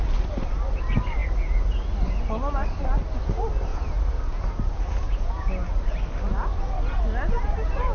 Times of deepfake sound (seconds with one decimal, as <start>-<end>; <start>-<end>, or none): 3.7-5.8